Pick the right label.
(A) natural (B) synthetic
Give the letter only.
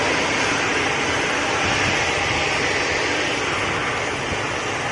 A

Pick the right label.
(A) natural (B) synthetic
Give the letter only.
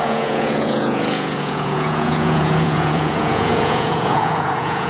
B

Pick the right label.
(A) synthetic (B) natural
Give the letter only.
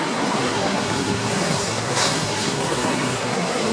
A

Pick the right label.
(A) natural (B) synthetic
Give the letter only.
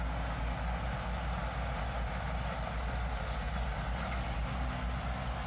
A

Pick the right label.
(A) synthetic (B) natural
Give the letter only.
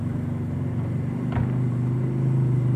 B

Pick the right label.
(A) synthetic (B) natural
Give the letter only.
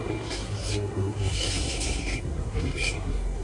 A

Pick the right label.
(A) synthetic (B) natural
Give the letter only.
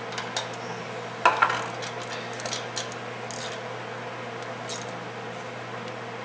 B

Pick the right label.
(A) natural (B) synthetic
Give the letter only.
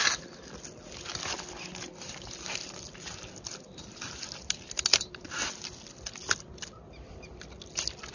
A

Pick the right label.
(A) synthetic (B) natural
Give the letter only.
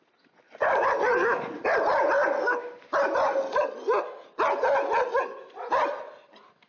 B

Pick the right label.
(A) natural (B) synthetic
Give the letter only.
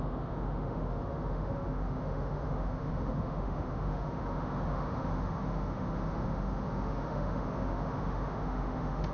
B